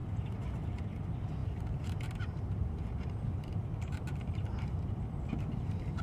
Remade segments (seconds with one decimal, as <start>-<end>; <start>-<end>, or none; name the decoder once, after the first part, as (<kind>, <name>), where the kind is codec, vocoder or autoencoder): 0.0-0.6 (vocoder, BigVGAN v2); 1.4-5.0